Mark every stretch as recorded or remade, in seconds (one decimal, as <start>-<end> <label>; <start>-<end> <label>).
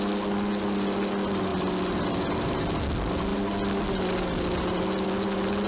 0.0-5.7 recorded